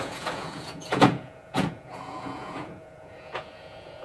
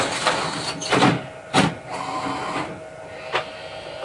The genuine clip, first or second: second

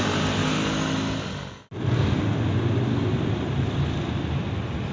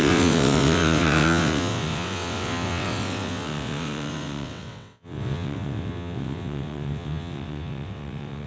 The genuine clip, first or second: first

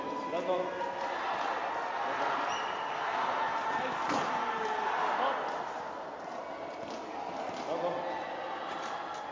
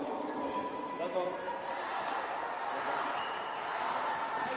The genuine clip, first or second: first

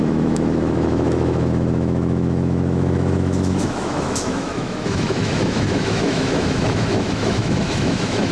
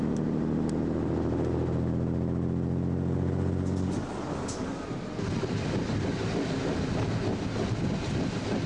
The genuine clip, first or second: second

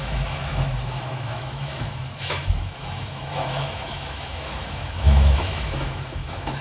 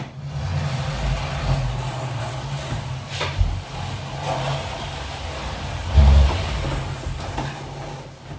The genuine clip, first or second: second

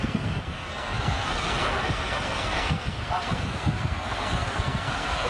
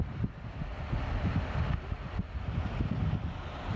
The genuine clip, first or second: second